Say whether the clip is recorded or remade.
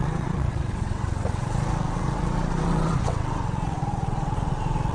remade